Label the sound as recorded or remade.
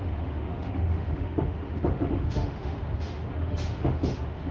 remade